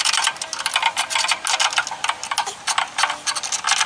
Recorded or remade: recorded